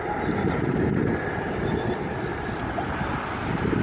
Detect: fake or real fake